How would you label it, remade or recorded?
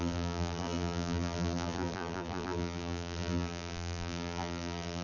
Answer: remade